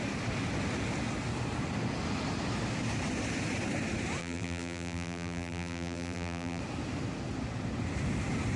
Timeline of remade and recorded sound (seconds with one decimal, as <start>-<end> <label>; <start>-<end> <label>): 0.0-4.2 recorded; 4.2-6.6 remade; 6.6-8.6 recorded